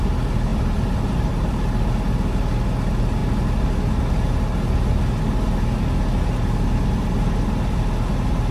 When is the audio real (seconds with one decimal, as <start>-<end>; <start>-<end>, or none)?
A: 0.0-0.5; 1.3-8.5